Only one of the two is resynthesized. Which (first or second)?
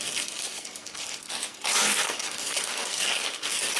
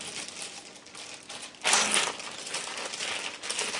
first